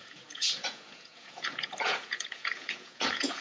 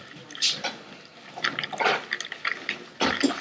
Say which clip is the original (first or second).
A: second